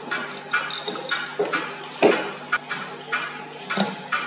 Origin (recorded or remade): recorded